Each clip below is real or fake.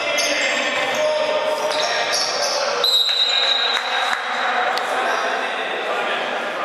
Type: real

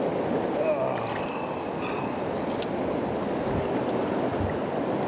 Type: real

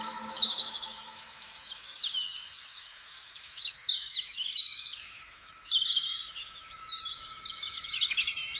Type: fake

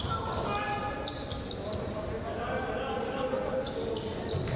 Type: real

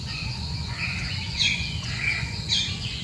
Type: fake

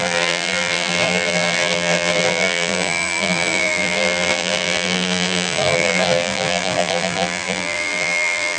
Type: fake